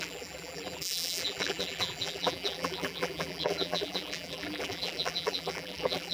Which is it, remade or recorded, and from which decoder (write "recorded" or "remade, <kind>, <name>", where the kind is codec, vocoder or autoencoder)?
remade, vocoder, BigVGAN v2